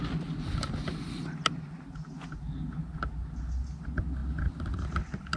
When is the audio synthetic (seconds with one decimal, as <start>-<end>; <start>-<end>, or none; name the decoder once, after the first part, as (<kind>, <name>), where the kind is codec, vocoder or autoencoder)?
none